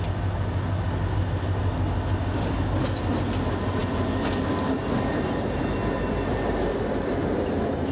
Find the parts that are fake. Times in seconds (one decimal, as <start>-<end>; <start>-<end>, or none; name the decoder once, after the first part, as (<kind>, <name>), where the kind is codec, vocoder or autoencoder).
none